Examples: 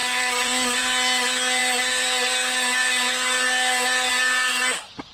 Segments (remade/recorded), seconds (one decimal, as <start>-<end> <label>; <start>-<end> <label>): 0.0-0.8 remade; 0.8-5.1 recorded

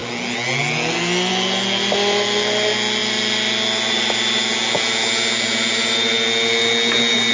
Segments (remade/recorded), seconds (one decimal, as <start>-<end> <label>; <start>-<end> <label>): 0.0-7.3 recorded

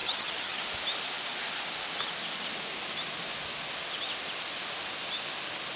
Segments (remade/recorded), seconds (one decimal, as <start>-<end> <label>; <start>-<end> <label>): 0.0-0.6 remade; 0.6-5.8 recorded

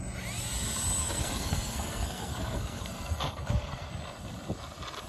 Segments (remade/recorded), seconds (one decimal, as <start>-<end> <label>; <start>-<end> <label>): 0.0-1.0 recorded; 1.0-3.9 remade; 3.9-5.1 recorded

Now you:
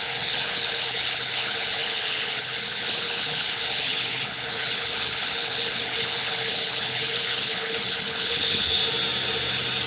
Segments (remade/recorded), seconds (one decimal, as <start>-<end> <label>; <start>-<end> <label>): 0.0-8.8 remade; 8.8-9.9 recorded

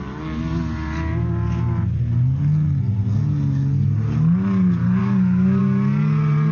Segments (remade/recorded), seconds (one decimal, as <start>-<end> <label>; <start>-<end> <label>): 0.0-5.0 recorded; 5.0-5.6 remade; 5.6-6.5 recorded

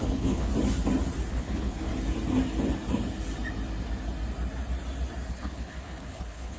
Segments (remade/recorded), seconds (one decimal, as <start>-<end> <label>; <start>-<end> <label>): 0.0-0.5 remade; 0.5-1.3 recorded; 1.3-1.9 remade; 1.9-5.3 recorded; 5.3-6.6 remade